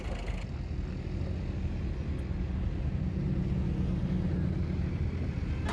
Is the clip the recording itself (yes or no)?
yes